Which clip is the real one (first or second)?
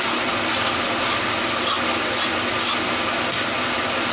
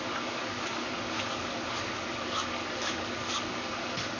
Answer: first